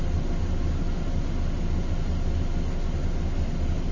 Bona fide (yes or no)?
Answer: yes